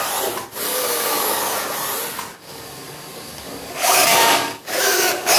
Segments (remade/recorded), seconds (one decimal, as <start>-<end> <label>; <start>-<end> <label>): 0.0-0.7 recorded; 0.7-1.4 remade; 1.4-2.3 recorded; 2.3-5.4 remade